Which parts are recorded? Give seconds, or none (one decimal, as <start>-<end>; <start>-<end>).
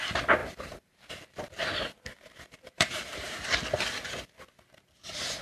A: 0.0-0.4; 3.5-5.4